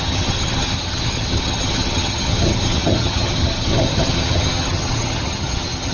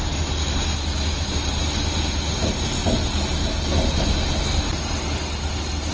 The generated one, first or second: first